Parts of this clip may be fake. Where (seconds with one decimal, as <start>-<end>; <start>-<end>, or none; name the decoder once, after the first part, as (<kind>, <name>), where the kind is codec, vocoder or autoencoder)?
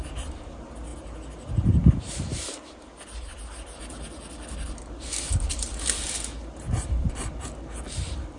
none